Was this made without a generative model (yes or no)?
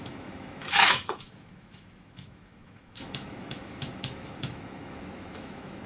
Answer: no